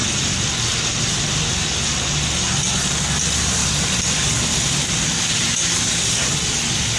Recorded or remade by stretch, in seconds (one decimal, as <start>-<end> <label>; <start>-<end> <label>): 0.0-3.6 recorded; 3.6-5.1 remade; 5.1-7.0 recorded